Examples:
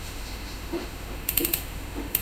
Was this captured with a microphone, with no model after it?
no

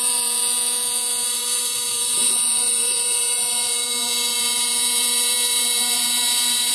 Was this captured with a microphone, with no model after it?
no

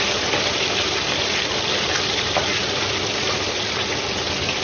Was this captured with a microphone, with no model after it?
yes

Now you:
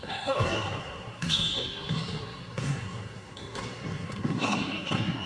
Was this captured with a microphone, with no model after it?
no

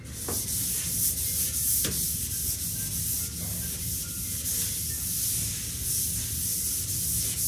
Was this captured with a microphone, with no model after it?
yes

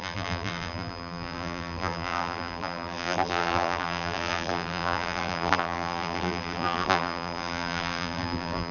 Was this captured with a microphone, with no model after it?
no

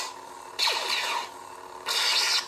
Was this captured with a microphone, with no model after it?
yes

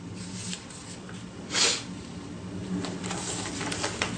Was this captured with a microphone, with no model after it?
yes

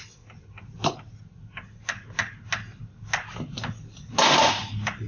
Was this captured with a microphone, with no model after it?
yes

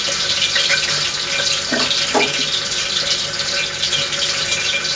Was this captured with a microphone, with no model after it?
yes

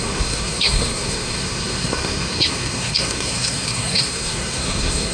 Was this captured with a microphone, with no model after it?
no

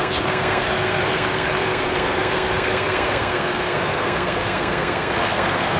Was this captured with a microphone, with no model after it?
no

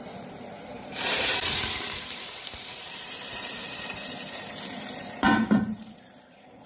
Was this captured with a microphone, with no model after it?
no